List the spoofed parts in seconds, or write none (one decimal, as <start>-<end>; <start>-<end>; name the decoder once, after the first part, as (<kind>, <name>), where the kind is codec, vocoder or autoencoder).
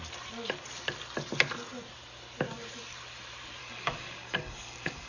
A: 3.6-5.1 (codec, DAC)